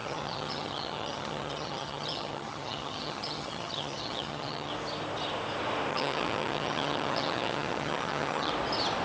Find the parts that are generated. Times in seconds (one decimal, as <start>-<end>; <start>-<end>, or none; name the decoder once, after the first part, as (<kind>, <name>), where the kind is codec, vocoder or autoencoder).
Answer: 0.0-4.7 (vocoder, HiFi-GAN); 5.9-8.5